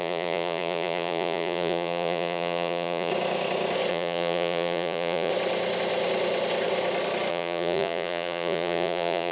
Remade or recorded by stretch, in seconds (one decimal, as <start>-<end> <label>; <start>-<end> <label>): 0.0-3.1 remade; 3.1-3.9 recorded; 3.9-5.3 remade; 5.3-7.3 recorded; 7.3-9.3 remade